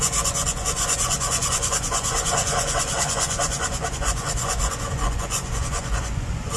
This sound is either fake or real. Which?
fake